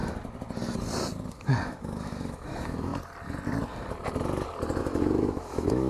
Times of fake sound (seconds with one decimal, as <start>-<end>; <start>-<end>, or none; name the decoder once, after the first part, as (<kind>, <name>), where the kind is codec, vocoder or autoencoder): 1.3-2.9 (autoencoder, DAC-VAE); 4.8-5.9